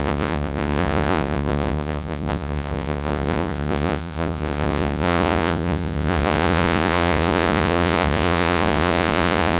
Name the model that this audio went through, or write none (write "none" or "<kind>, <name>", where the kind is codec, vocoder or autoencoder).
vocoder, Vocos